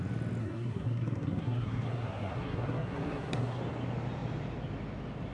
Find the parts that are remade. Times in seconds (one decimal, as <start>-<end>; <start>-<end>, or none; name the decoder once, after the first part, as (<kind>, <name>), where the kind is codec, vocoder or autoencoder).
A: 0.4-3.6 (codec, SNAC)